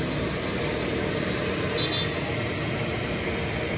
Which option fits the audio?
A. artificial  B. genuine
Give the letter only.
B